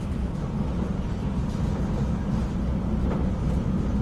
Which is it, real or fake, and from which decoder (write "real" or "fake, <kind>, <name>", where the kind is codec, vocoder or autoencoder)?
real